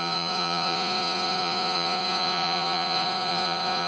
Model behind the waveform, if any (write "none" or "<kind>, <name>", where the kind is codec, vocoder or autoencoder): vocoder, Vocos